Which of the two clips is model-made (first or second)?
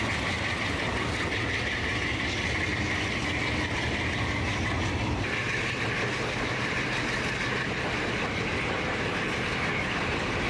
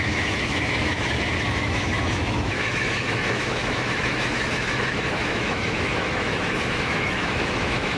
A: second